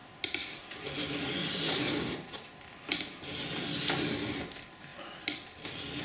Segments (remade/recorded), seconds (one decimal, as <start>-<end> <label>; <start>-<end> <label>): 0.0-6.0 recorded